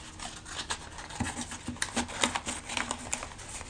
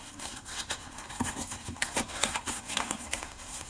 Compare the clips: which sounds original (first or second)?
first